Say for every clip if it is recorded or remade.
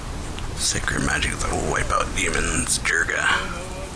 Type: recorded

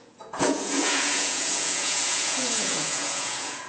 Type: remade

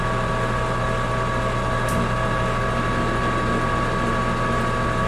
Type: recorded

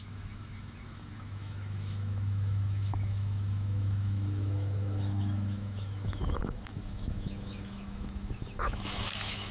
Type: remade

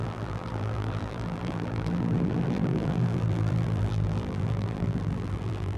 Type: remade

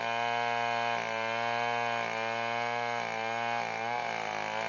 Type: recorded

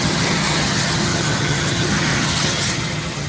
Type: remade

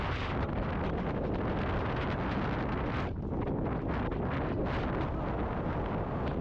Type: recorded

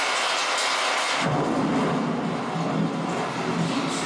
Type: recorded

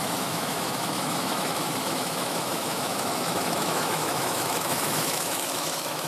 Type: remade